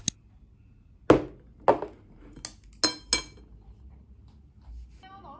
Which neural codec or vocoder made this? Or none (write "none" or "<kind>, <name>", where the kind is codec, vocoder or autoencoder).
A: none